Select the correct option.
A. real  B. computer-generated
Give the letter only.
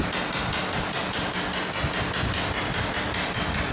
A